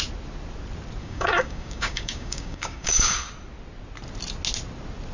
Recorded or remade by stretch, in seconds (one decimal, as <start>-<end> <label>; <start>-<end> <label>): 0.0-1.0 recorded; 1.0-3.3 remade; 3.3-5.1 recorded